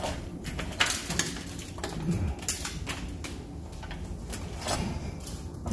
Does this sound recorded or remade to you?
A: recorded